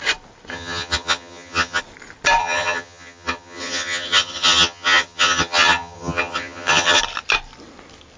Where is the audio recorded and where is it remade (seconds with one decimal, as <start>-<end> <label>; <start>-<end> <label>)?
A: 0.0-0.5 recorded; 0.5-1.8 remade; 1.8-2.4 recorded; 2.4-7.0 remade; 7.0-8.2 recorded